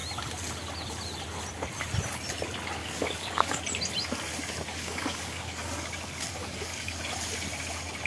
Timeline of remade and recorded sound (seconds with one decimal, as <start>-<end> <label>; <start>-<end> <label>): 0.0-2.8 recorded; 2.8-3.6 remade; 3.6-4.7 recorded; 4.7-7.0 remade; 7.0-8.1 recorded